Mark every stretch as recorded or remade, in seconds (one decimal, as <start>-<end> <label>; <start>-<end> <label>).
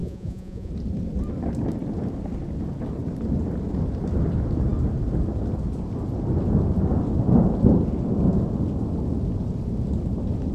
0.0-0.7 remade; 0.7-10.5 recorded